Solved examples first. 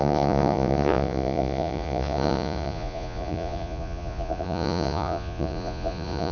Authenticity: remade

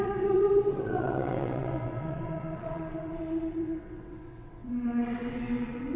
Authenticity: remade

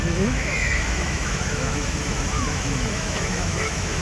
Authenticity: remade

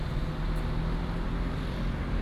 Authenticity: recorded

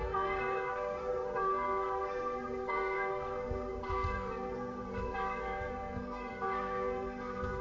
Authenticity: remade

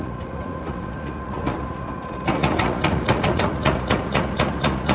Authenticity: remade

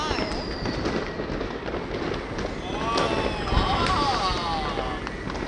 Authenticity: recorded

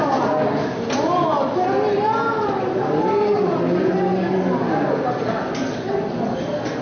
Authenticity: recorded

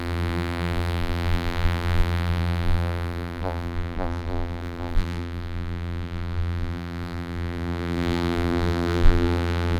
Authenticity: remade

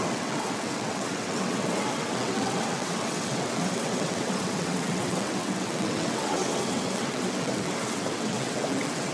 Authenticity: remade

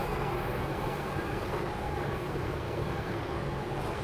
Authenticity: remade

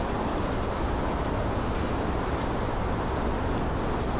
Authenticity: recorded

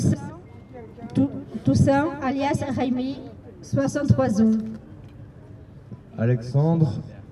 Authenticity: recorded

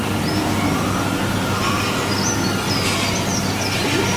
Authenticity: recorded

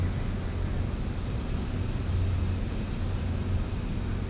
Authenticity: recorded